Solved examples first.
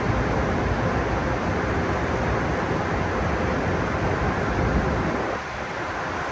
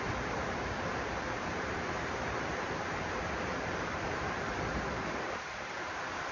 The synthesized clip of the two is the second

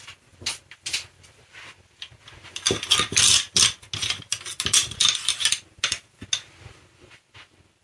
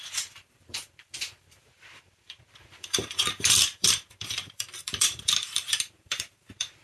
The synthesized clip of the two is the second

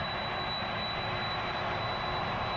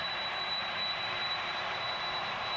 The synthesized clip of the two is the second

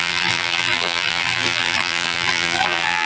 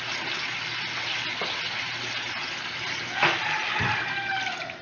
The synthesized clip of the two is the first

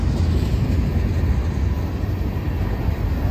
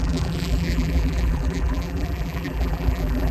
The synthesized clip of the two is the second